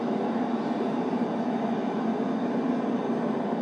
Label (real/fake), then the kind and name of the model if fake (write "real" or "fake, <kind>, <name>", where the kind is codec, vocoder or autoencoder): fake, vocoder, BigVGAN v2